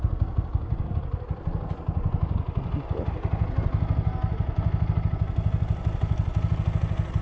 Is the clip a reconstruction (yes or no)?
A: no